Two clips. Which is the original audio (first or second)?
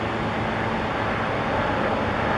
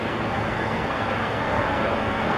first